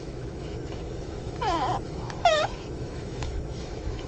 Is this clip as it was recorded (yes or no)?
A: no